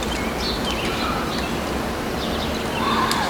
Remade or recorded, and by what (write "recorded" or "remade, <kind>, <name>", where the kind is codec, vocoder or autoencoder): recorded